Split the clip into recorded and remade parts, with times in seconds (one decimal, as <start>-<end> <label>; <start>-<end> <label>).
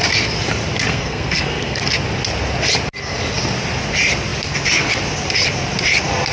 0.0-0.9 recorded; 0.9-1.8 remade; 1.8-6.3 recorded